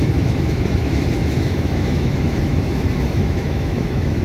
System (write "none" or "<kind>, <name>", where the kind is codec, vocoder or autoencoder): autoencoder, DAC-VAE